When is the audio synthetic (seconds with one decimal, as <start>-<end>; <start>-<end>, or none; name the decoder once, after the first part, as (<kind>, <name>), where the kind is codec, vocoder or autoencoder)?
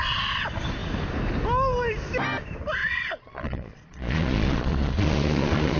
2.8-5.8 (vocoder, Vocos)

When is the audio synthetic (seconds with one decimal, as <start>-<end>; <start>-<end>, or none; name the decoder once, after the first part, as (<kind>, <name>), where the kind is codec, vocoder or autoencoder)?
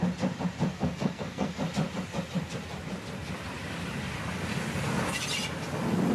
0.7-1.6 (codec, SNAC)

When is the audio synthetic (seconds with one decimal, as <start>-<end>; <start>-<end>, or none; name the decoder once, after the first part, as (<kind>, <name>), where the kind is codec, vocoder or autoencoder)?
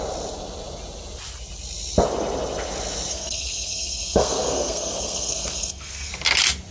3.1-6.1 (codec, SNAC)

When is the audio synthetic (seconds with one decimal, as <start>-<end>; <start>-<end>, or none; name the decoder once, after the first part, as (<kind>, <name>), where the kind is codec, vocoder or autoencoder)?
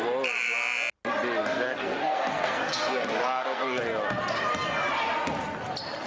1.4-3.8 (codec, SNAC)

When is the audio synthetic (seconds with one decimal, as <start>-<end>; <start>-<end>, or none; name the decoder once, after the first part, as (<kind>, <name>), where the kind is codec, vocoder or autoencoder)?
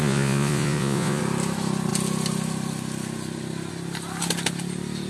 0.0-1.2 (vocoder, Vocos)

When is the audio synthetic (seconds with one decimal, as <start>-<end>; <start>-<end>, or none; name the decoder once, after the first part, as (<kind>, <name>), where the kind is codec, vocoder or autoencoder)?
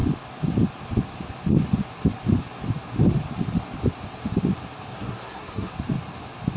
4.9-5.7 (codec, SNAC)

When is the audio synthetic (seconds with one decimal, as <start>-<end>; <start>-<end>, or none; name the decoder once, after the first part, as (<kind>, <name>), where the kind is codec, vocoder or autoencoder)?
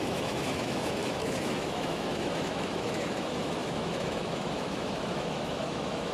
0.0-6.1 (autoencoder, DAC-VAE)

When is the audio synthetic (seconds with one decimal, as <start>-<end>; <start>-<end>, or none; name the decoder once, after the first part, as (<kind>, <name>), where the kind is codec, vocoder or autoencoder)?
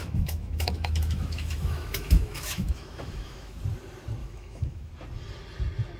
0.0-3.6 (autoencoder, DAC-VAE); 4.2-4.9